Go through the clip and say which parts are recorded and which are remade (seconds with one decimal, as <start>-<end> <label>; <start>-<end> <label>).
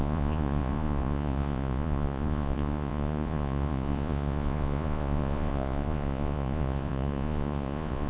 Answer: 0.0-8.1 remade